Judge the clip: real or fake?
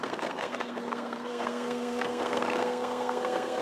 fake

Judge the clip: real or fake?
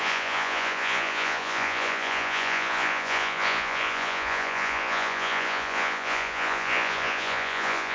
fake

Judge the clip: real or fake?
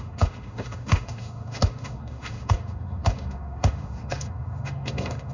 fake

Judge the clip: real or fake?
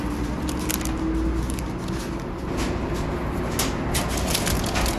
real